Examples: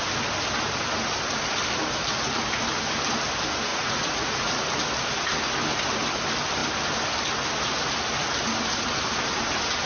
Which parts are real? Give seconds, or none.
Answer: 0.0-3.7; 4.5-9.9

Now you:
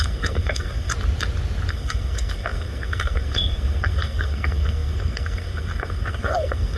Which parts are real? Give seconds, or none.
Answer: 0.9-1.7

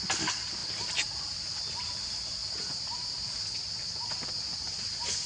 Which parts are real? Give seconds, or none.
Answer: 0.0-5.3

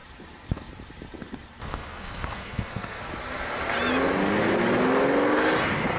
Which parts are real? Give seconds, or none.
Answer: 0.0-1.6; 3.0-6.0

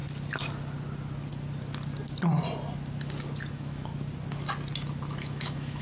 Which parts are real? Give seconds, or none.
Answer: 0.0-3.5; 3.9-5.2